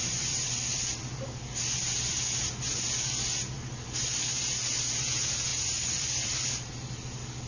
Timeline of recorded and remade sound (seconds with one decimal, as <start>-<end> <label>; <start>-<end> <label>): 0.0-1.0 remade; 1.0-5.5 recorded; 5.5-6.5 remade; 6.5-7.5 recorded